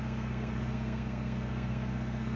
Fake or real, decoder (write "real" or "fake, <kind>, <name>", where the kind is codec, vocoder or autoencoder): fake, codec, SNAC